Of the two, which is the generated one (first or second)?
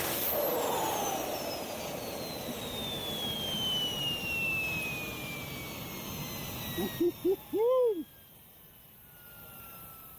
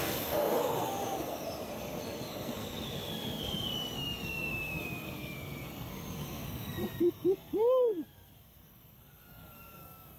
second